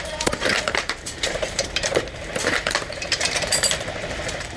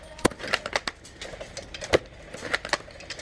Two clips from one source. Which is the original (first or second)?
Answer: second